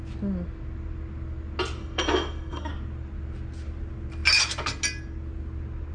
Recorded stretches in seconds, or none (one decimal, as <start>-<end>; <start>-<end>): 0.0-1.8; 2.7-5.9